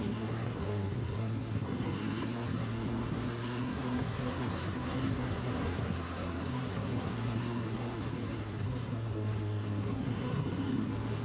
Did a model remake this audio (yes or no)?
yes